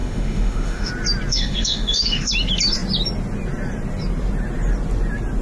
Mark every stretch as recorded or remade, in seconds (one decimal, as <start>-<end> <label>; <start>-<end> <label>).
0.0-0.9 remade; 0.9-1.3 recorded; 1.3-2.3 remade; 2.3-5.4 recorded